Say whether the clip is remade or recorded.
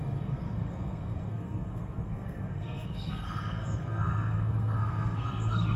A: remade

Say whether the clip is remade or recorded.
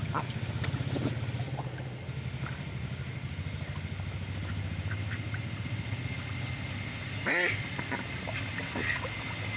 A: recorded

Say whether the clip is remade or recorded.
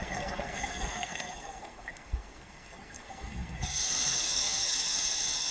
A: remade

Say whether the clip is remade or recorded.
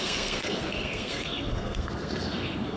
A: remade